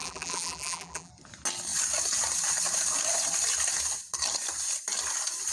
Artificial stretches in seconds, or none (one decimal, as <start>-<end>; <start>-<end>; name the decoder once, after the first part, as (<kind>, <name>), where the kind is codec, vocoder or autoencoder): 0.0-1.1 (vocoder, BigVGAN v2)